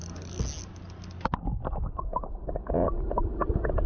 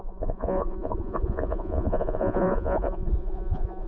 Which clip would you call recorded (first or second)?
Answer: first